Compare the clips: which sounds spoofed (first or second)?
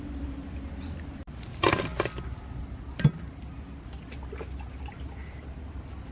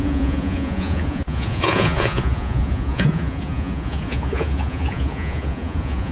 second